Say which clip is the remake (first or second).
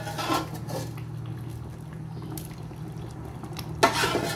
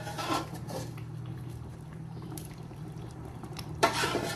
second